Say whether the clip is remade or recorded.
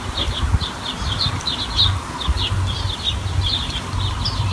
recorded